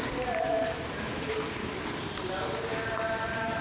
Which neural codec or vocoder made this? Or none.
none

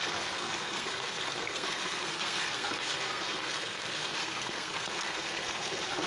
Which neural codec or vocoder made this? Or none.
codec, SNAC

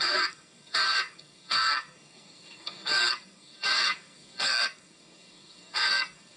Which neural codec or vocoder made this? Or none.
codec, SNAC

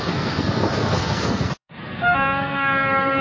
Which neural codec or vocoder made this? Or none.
codec, SNAC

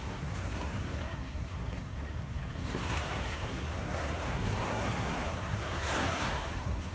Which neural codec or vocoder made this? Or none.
codec, SNAC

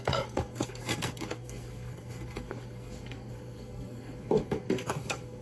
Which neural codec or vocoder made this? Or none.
codec, SNAC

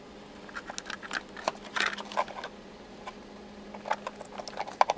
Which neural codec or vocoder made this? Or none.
none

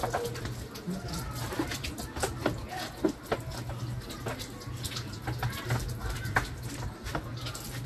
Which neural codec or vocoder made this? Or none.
none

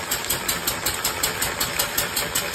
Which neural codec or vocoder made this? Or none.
none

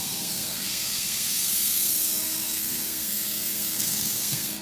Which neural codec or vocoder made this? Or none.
codec, SNAC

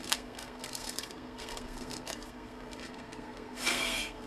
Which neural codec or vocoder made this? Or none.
codec, SNAC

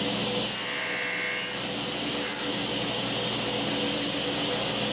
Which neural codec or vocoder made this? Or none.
none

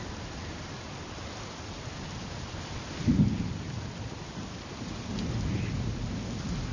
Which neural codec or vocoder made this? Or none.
none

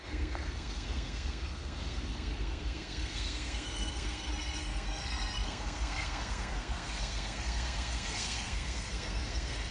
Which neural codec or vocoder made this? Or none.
codec, SNAC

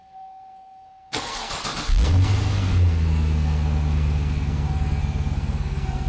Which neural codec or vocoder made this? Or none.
codec, SNAC